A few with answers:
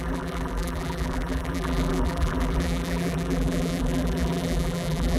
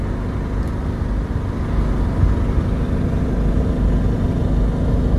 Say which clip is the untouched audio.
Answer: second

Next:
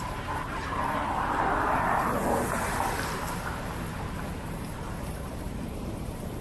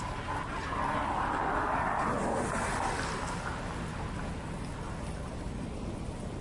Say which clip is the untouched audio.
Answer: second